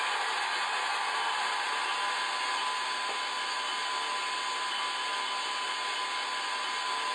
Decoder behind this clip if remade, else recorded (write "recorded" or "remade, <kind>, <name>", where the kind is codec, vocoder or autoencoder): recorded